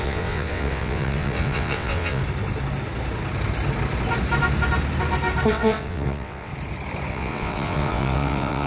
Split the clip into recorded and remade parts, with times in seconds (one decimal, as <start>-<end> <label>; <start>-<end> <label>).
0.0-2.2 remade; 2.2-5.5 recorded; 5.5-6.5 remade; 6.5-7.1 recorded; 7.1-8.7 remade